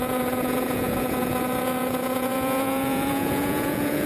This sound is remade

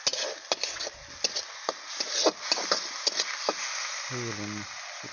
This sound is recorded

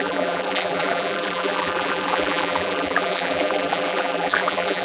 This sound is remade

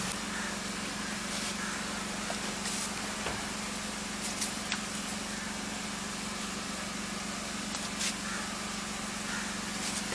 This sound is recorded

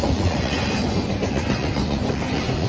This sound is remade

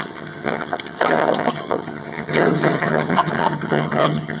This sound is remade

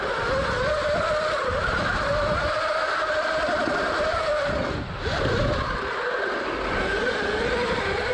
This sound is recorded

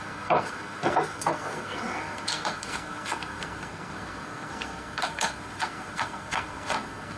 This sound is remade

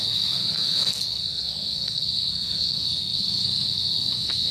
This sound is remade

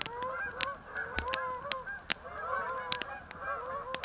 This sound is recorded